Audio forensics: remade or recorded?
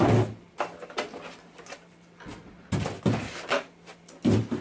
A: recorded